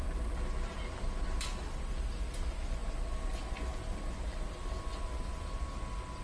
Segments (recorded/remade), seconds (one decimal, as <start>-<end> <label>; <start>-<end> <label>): 0.0-6.2 recorded

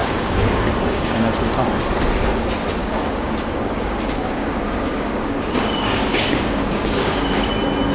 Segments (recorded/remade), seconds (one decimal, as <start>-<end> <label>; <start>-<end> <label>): 0.0-1.5 remade; 1.5-2.8 recorded; 2.8-7.5 remade; 7.5-7.9 recorded

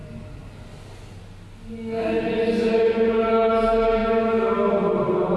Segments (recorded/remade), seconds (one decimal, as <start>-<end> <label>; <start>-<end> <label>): 0.0-5.4 recorded

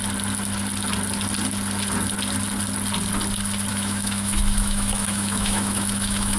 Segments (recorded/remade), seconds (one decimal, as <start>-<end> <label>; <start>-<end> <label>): 0.0-3.7 recorded; 3.7-6.4 remade

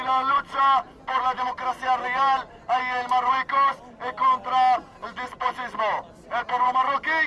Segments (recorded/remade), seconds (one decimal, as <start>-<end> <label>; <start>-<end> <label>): 0.0-7.3 recorded

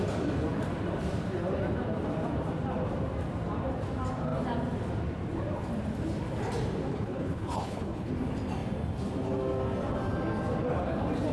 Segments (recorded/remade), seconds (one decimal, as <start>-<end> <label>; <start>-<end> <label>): 0.0-6.9 recorded; 6.9-8.1 remade; 8.1-11.3 recorded